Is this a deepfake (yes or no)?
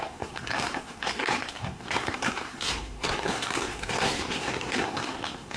yes